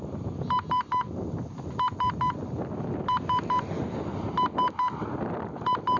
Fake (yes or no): no